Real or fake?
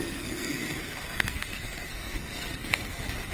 fake